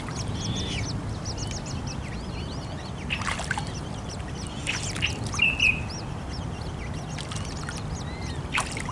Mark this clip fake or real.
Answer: real